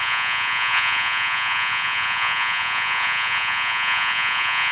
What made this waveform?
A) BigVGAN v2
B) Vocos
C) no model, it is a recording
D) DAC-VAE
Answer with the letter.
B